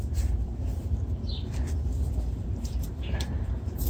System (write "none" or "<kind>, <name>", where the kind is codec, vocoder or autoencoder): vocoder, BigVGAN v2